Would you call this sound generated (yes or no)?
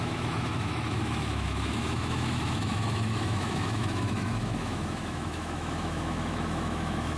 yes